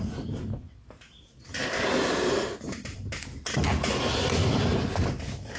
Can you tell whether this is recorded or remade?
recorded